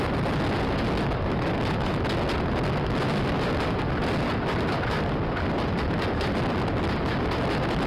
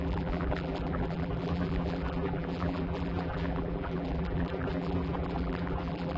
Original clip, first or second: first